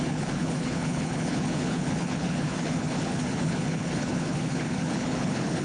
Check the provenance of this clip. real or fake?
fake